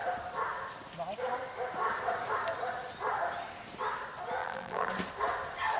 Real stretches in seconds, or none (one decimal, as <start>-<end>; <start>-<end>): 0.0-4.4; 4.9-5.8